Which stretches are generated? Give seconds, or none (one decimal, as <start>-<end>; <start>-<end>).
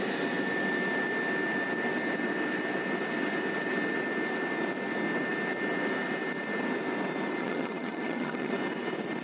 7.4-8.5